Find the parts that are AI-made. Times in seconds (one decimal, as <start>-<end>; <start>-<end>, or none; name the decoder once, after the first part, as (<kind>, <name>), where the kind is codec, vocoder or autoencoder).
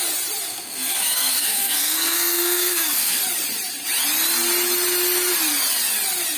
0.5-3.2 (codec, SNAC)